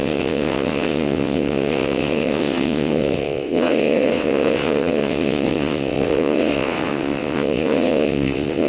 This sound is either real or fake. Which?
fake